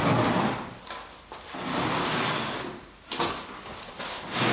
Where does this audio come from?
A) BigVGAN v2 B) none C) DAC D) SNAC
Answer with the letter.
B